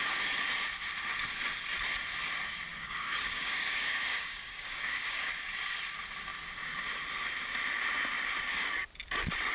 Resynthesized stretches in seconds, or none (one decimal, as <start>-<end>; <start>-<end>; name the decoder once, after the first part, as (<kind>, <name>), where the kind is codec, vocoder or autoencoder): 2.7-5.3 (codec, DAC)